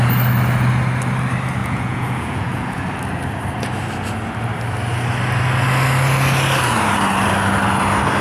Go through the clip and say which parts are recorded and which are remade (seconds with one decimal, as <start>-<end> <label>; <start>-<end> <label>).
0.0-1.6 recorded; 1.6-2.8 remade; 2.8-8.2 recorded